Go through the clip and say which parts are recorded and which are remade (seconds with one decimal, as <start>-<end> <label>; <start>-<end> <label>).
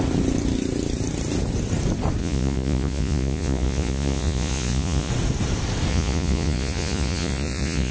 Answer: 0.0-2.2 recorded; 2.2-5.1 remade; 5.1-5.9 recorded; 5.9-7.9 remade